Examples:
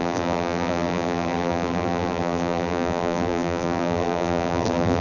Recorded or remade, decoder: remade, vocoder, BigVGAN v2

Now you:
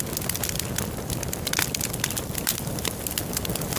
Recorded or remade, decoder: recorded